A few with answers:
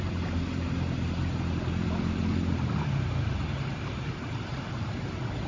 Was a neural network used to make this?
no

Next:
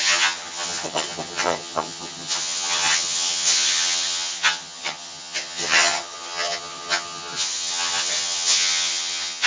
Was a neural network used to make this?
yes